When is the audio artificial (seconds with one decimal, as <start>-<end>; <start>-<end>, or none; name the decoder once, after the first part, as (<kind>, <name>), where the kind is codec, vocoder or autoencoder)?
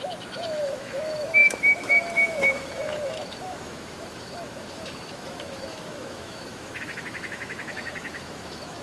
0.0-8.8 (autoencoder, DAC-VAE)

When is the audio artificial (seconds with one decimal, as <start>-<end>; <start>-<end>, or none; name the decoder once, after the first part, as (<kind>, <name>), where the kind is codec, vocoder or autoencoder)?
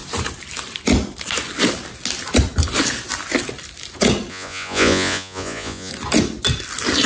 4.3-5.9 (vocoder, Vocos)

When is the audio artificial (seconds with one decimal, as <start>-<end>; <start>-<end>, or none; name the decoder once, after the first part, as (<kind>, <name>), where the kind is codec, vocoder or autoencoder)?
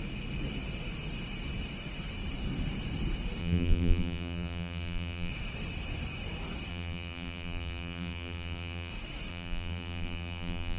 3.4-5.3 (vocoder, BigVGAN v2); 6.7-8.9; 9.3-10.8